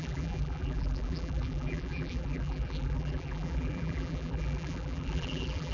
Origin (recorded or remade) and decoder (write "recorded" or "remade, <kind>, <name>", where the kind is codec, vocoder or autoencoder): remade, vocoder, BigVGAN v2